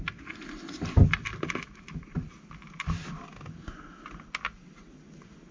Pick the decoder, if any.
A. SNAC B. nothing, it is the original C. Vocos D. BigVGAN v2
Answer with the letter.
B